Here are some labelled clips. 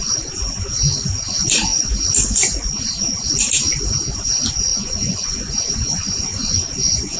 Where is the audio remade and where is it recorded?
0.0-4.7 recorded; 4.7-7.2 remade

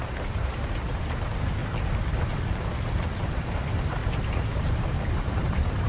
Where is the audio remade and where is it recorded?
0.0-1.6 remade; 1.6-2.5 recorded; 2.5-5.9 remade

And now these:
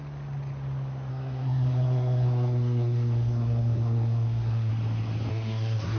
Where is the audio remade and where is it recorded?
0.0-1.1 recorded; 1.1-4.7 remade; 4.7-5.3 recorded; 5.3-6.0 remade

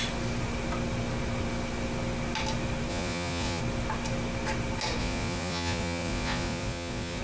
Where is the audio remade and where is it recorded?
0.0-2.9 recorded; 2.9-3.6 remade; 3.6-5.0 recorded; 5.0-7.2 remade

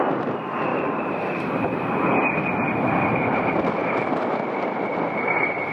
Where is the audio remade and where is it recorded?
0.0-0.7 recorded; 0.7-1.9 remade; 1.9-5.7 recorded

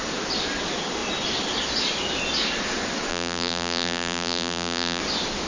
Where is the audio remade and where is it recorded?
0.0-3.1 recorded; 3.1-5.0 remade; 5.0-5.5 recorded

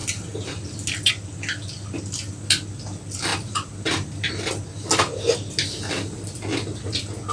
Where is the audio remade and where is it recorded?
0.0-1.1 remade; 1.1-3.3 recorded; 3.3-4.3 remade; 4.3-7.3 recorded

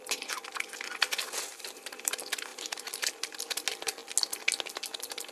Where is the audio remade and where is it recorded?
0.0-1.5 recorded; 1.5-2.1 remade; 2.1-2.5 recorded; 2.5-3.1 remade; 3.1-5.3 recorded